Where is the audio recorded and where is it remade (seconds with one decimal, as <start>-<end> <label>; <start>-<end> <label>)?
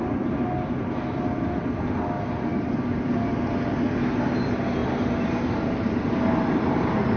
0.0-2.5 recorded; 2.5-3.8 remade; 3.8-4.8 recorded; 4.8-7.2 remade